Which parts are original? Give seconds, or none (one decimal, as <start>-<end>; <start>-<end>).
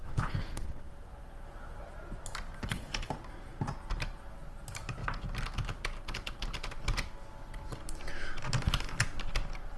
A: 0.8-2.6; 3.1-9.8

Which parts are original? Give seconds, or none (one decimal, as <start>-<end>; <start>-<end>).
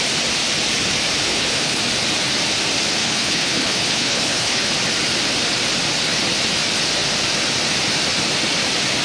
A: 0.0-1.2; 1.8-3.0; 4.7-9.0